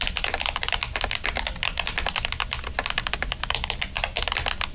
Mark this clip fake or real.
real